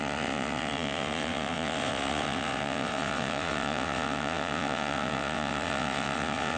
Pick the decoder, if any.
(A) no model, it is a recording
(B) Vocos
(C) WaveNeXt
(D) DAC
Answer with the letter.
C